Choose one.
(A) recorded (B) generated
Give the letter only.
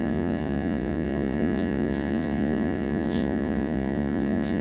B